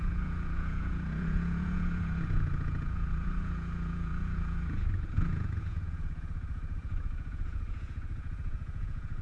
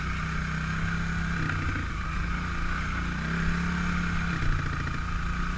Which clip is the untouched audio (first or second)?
second